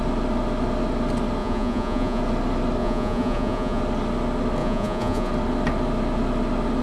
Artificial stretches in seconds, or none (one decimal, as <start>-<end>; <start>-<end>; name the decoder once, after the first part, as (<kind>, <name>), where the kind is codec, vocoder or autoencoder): 1.4-2.2 (vocoder, Vocos); 2.8-3.8; 4.6-5.3